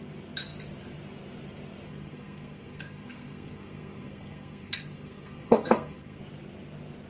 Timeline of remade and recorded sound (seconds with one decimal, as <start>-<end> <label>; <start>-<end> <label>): 0.0-1.9 recorded; 1.9-6.2 remade; 6.2-7.1 recorded